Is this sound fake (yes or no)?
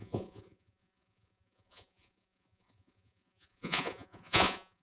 yes